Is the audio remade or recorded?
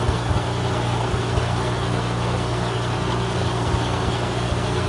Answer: remade